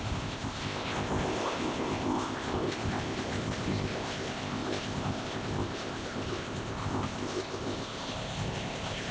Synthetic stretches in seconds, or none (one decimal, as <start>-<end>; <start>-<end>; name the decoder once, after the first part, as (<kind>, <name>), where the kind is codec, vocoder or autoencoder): 0.0-9.1 (codec, ZipCodec)

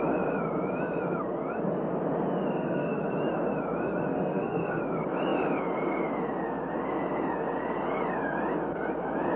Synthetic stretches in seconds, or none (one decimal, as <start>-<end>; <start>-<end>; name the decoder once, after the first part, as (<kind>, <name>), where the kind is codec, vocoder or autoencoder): 2.5-3.0 (codec, SNAC); 4.1-4.8

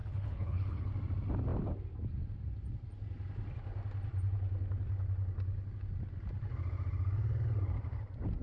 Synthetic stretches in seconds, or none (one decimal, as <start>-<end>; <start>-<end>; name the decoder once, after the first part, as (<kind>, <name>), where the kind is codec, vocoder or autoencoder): 0.0-0.9 (codec, HILCodec)

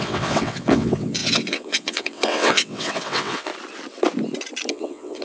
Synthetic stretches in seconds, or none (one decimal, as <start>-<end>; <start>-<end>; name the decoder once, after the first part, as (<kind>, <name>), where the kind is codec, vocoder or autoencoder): 0.0-3.5 (vocoder, WaveNeXt); 4.7-5.2

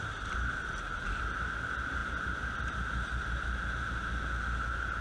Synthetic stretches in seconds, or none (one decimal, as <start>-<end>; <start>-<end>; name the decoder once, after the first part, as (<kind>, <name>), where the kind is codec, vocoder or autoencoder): none

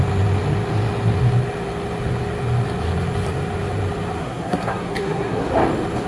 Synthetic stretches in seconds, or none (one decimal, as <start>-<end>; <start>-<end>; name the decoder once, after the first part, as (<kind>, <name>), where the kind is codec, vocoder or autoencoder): 4.2-5.5 (codec, SNAC)